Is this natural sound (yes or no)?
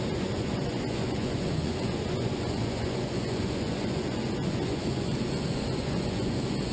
no